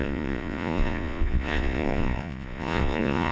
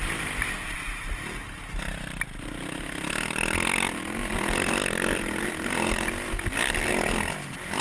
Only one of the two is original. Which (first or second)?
second